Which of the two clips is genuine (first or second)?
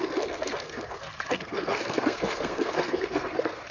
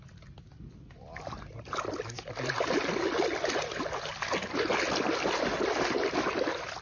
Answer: second